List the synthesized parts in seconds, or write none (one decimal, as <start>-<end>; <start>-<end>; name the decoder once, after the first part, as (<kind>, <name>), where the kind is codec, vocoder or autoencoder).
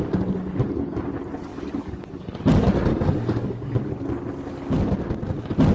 1.5-2.4 (codec, DAC); 2.9-3.9